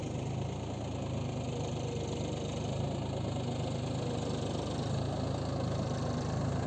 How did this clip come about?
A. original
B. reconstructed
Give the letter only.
A